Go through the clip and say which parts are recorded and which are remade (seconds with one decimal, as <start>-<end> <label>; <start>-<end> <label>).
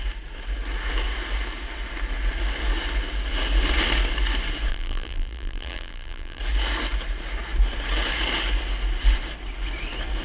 0.0-4.7 recorded; 4.7-6.4 remade; 6.4-10.2 recorded